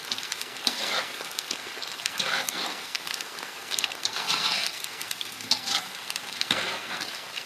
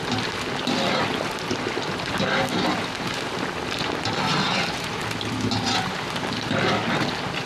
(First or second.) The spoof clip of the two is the first